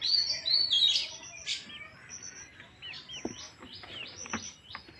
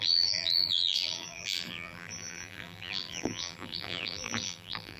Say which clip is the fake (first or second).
second